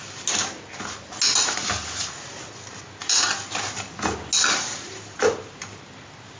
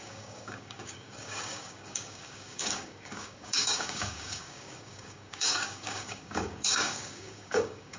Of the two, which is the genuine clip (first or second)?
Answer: first